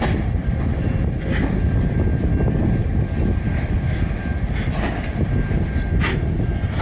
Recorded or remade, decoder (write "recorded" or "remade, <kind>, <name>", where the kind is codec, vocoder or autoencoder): recorded